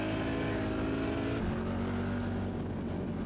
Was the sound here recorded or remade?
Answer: recorded